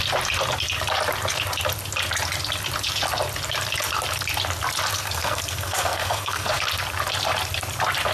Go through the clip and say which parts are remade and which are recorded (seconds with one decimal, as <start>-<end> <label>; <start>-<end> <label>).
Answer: 0.0-4.9 recorded; 4.9-6.6 remade; 6.6-8.1 recorded